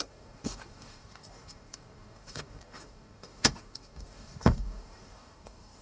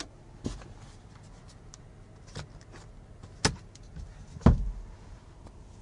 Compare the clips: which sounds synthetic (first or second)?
first